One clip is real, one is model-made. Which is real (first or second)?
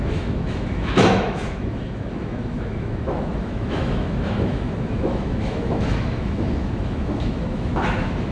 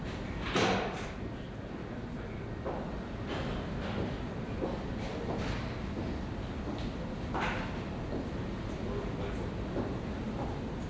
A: second